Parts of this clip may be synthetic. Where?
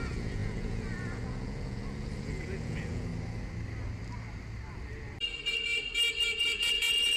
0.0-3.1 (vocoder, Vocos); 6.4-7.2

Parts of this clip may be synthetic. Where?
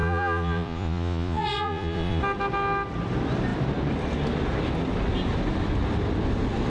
0.0-2.2 (vocoder, Vocos)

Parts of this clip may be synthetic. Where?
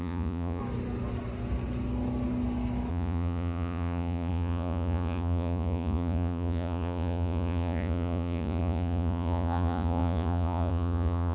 0.0-0.6 (vocoder, Vocos); 2.9-11.3